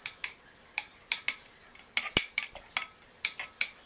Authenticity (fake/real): real